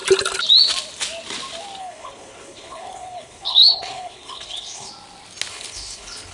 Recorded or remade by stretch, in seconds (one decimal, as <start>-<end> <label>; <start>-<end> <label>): 0.0-1.8 recorded; 1.8-4.9 remade; 4.9-5.5 recorded; 5.5-6.3 remade